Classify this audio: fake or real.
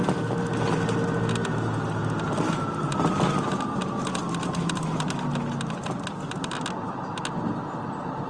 real